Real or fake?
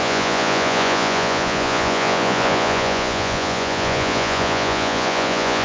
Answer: fake